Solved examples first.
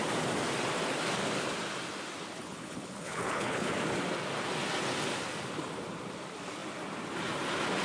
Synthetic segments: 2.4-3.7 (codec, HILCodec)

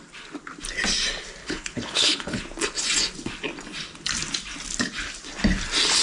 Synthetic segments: 1.4-2.4 (codec, HILCodec)

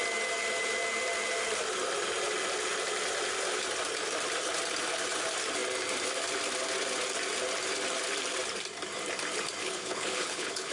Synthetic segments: 9.6-10.7 (codec, HILCodec)

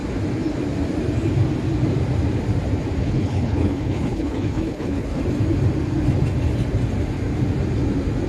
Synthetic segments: 3.0-5.2 (codec, HILCodec)

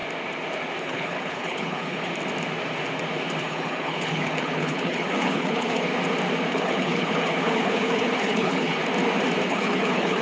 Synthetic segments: 0.8-2.1 (codec, HILCodec); 3.4-5.9; 6.5-8.8; 9.5-10.2

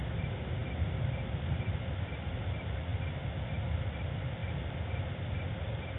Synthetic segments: none